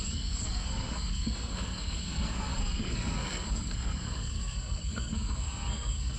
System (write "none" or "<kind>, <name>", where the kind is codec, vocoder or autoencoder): codec, SNAC